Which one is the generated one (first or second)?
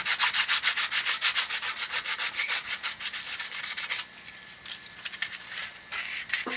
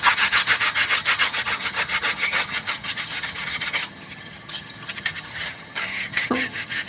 second